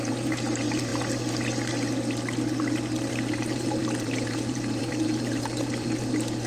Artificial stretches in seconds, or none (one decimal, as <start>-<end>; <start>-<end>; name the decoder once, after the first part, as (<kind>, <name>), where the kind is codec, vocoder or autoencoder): 0.0-0.9 (vocoder, BigVGAN v2); 3.1-6.5